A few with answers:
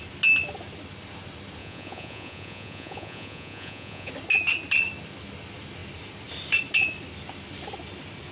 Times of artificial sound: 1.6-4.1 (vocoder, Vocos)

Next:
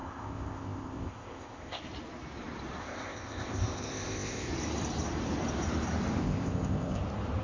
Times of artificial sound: 0.0-1.8 (codec, ZipCodec); 2.8-4.5; 6.2-7.0

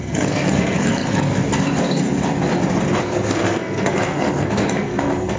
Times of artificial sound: 0.0-1.3 (codec, SNAC); 3.0-5.4

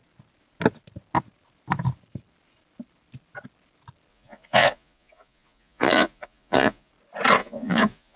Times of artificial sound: 4.1-6.9 (vocoder, Vocos); 7.4-8.2

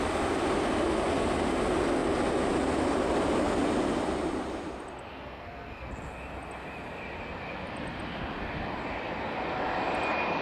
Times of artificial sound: 5.1-5.9 (codec, SNAC)

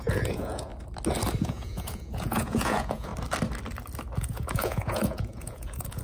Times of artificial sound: 0.0-0.7 (vocoder, Vocos); 1.4-3.1; 4.2-6.0

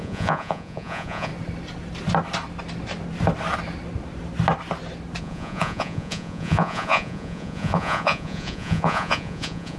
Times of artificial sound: 0.0-1.3 (vocoder, Vocos); 5.2-9.8

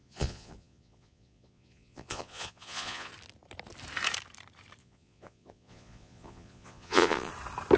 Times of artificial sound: 0.0-3.1 (vocoder, Vocos); 4.8-7.3